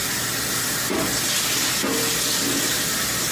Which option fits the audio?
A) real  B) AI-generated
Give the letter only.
A